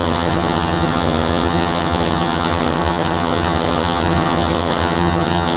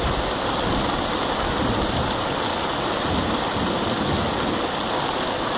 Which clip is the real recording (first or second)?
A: second